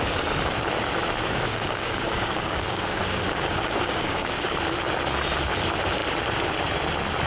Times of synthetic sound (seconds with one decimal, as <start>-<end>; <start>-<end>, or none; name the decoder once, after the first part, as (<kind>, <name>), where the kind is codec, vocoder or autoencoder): 1.5-4.5 (codec, DAC)